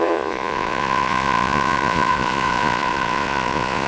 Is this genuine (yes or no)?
no